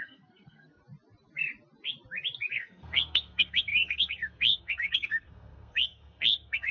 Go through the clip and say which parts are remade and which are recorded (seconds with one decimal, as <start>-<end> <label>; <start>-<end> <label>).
0.0-0.8 remade; 0.8-2.5 recorded; 2.5-6.7 remade